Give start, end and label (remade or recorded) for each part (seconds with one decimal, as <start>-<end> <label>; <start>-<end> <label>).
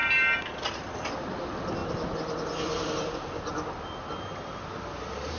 0.0-5.4 recorded